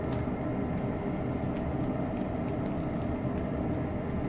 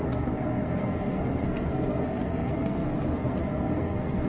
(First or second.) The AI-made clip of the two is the second